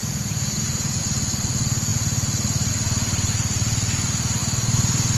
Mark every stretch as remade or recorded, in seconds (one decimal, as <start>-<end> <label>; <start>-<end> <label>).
0.0-1.0 remade; 1.0-5.2 recorded